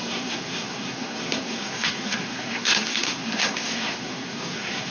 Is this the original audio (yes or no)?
no